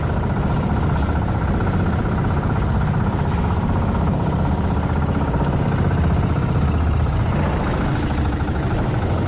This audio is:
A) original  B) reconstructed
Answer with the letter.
A